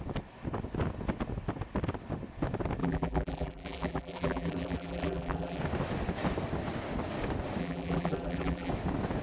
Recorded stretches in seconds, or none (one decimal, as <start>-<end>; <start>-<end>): 0.0-2.8; 5.6-7.6; 8.7-9.2